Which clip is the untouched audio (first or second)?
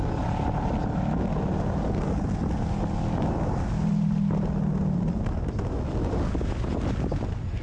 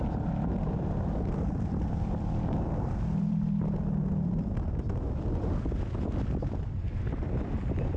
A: first